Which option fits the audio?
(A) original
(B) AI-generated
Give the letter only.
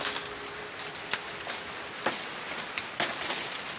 A